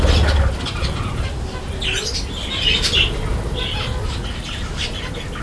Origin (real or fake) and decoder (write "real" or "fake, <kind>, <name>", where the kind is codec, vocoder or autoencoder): real